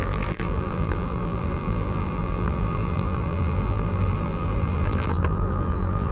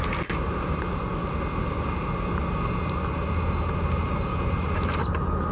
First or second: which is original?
second